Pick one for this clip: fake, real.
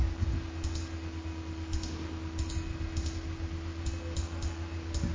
real